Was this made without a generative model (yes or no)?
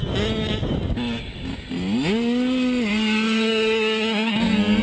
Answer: yes